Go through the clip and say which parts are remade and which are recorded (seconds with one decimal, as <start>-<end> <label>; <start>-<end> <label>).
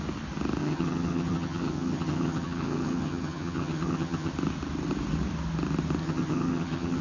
0.0-0.6 recorded; 0.6-4.3 remade; 4.3-6.0 recorded; 6.0-7.0 remade